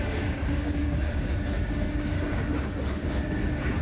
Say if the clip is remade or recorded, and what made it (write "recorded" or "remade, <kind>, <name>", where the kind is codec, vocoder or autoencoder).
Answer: remade, codec, DAC